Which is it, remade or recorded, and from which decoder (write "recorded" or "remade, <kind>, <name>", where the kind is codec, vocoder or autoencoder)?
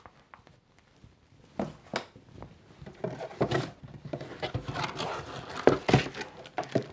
recorded